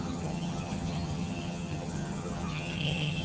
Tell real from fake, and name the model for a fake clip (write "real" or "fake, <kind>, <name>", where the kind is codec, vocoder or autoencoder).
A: fake, vocoder, HiFi-GAN